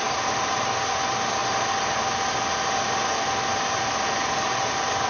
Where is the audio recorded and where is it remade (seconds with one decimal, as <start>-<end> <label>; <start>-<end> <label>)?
0.0-5.1 recorded